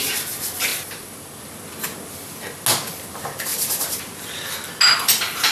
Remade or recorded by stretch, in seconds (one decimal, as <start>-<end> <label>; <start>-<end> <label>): 0.0-0.7 recorded; 0.7-1.4 remade; 1.4-5.5 recorded

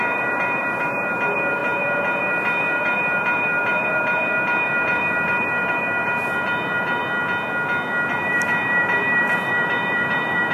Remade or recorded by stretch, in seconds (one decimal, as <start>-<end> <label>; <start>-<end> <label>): 0.0-7.0 remade; 7.0-8.1 recorded; 8.1-10.5 remade

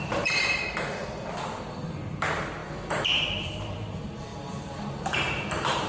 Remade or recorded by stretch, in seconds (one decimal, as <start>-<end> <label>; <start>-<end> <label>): 0.0-1.0 remade; 1.0-2.2 recorded; 2.2-2.6 remade; 2.6-3.1 recorded; 3.1-4.3 remade; 4.3-5.1 recorded; 5.1-5.9 remade

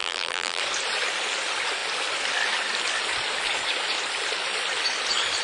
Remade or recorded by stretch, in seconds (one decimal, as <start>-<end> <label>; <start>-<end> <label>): 0.0-0.6 remade; 0.6-5.4 recorded

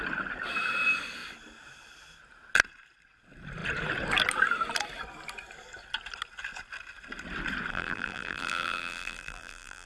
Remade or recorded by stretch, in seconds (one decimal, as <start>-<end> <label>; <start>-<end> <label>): 0.0-7.7 recorded; 7.7-9.9 remade

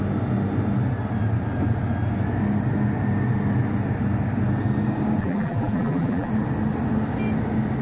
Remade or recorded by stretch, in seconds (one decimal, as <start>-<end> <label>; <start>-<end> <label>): 0.0-5.2 recorded; 5.2-6.3 remade; 6.3-7.8 recorded

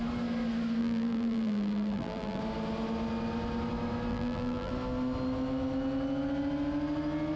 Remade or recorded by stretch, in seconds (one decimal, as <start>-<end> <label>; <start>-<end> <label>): 0.0-0.8 recorded; 0.8-2.4 remade; 2.4-4.1 recorded; 4.1-4.7 remade; 4.7-7.4 recorded

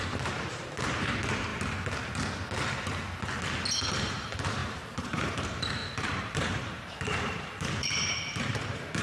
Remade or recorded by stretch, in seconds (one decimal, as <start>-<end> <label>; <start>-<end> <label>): 0.0-1.5 remade; 1.5-3.9 recorded; 3.9-9.0 remade